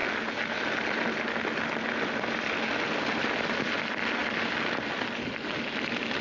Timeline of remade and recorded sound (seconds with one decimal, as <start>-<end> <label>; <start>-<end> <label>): 0.0-6.2 recorded